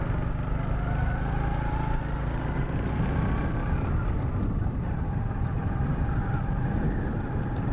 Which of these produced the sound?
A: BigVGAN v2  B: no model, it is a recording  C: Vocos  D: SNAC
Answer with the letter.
B